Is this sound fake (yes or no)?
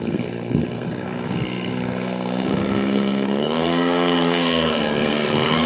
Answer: yes